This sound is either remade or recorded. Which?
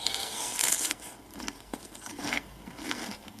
remade